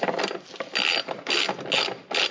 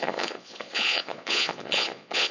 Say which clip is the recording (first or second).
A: first